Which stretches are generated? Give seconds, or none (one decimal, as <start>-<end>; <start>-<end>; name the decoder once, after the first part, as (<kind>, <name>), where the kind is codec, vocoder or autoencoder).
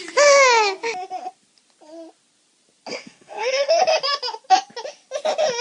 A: 2.9-3.8 (codec, SNAC)